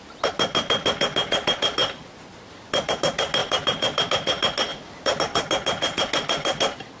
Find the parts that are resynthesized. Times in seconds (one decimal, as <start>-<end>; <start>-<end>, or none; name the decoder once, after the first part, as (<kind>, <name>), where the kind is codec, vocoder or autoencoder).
1.8-2.9 (vocoder, BigVGAN v2); 3.4-4.1; 4.7-5.2